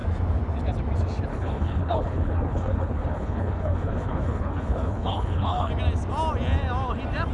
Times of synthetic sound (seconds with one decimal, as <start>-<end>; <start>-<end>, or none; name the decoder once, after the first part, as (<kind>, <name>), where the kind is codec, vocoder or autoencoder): 1.3-5.7 (codec, HILCodec)

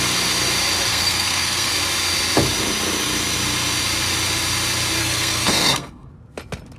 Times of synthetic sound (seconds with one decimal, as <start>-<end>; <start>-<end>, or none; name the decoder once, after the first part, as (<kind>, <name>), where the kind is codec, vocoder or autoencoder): 0.9-1.7 (codec, SNAC); 5.0-6.1

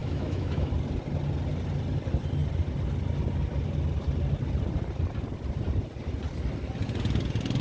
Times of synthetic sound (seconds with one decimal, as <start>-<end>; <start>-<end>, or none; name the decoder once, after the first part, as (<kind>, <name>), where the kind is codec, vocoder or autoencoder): 0.0-0.7 (autoencoder, DAC-VAE)

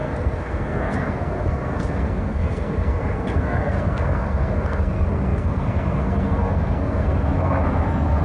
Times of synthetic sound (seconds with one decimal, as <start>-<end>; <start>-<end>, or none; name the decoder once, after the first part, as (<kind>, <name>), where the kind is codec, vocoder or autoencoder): 0.0-8.2 (codec, SNAC)

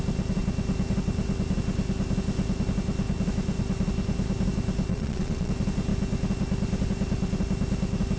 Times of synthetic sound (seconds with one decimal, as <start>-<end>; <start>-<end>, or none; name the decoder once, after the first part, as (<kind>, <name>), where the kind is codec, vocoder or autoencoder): 4.9-5.5 (vocoder, Vocos)

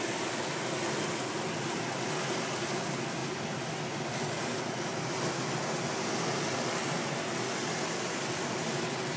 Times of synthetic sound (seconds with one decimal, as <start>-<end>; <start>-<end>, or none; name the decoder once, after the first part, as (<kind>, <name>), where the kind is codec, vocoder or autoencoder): none